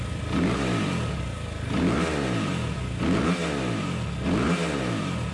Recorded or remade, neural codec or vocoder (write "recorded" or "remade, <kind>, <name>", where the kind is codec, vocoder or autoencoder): recorded